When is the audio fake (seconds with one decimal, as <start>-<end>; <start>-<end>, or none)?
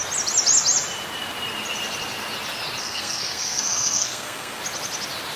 2.8-4.6